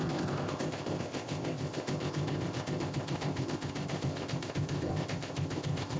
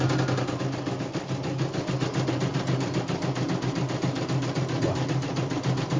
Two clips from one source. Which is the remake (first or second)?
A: first